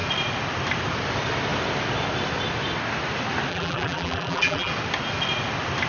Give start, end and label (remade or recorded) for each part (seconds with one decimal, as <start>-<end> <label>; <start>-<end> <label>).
0.0-3.5 recorded; 3.5-4.7 remade; 4.7-5.9 recorded